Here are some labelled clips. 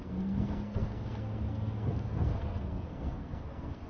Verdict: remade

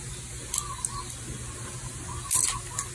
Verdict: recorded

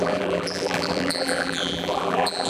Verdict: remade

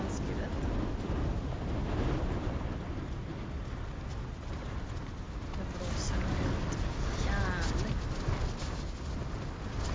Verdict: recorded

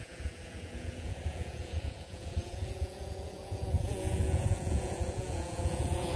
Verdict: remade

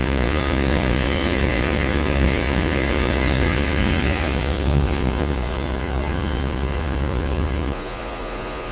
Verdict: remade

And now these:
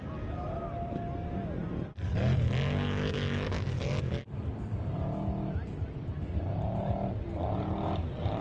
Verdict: recorded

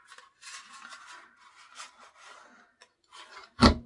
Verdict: recorded